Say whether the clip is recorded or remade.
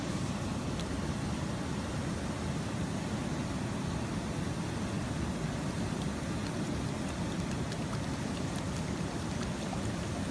recorded